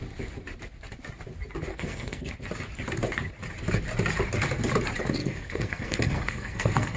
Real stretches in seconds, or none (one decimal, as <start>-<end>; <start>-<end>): 0.0-1.7; 2.3-5.2

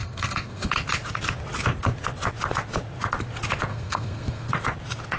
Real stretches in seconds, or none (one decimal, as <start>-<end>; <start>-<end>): 0.7-3.7; 4.5-5.2

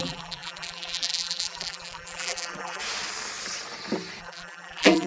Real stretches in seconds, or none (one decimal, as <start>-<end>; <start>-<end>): 2.8-4.2